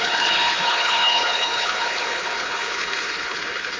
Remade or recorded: remade